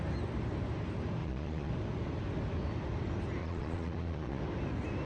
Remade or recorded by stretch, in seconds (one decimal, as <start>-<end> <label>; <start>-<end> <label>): 0.0-1.2 recorded; 1.2-1.7 remade; 1.7-3.4 recorded; 3.4-4.4 remade; 4.4-5.1 recorded

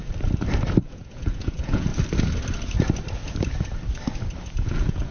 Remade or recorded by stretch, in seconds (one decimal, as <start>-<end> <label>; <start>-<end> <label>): 0.0-0.8 recorded; 0.8-1.9 remade; 1.9-4.5 recorded; 4.5-5.1 remade

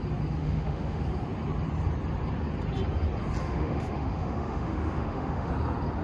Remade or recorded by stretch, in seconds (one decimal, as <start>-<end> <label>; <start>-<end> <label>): 0.0-0.4 recorded; 0.4-1.0 remade; 1.0-3.4 recorded; 3.4-5.5 remade; 5.5-6.0 recorded

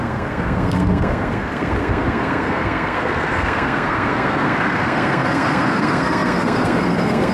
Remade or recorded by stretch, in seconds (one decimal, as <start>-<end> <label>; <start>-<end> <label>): 0.0-7.3 remade

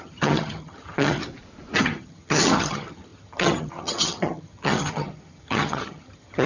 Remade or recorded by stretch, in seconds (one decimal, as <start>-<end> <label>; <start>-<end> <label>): 0.0-1.2 remade; 1.2-1.8 recorded; 1.8-6.5 remade

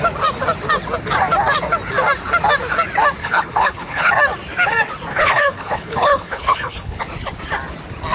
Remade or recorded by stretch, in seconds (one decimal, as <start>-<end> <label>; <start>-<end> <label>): 0.0-3.2 recorded; 3.2-4.1 remade; 4.1-5.1 recorded; 5.1-7.0 remade; 7.0-8.1 recorded

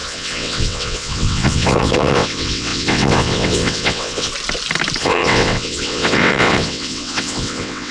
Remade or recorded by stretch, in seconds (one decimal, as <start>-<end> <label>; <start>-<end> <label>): 0.0-4.3 remade; 4.3-5.0 recorded; 5.0-7.9 remade

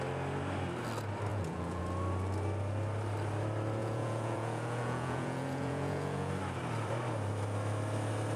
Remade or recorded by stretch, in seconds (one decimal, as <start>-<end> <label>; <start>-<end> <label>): 0.0-1.3 recorded; 1.3-1.8 remade; 1.8-3.8 recorded; 3.8-6.3 remade; 6.3-8.4 recorded